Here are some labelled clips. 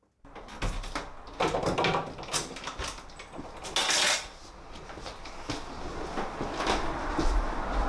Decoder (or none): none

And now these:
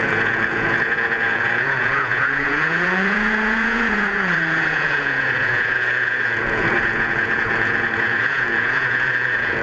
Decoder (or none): vocoder, Vocos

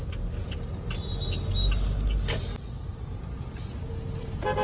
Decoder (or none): none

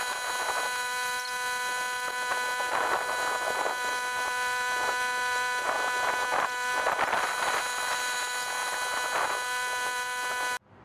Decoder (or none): none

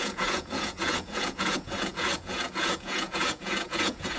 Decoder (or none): vocoder, Vocos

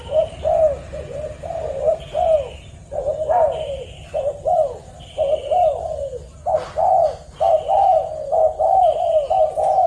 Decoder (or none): none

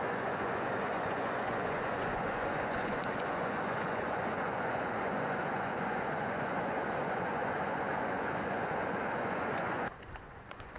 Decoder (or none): vocoder, Vocos